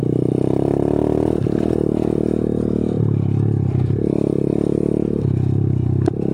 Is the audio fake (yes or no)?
no